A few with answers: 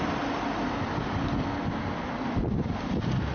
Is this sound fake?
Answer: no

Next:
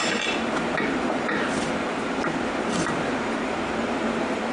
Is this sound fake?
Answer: yes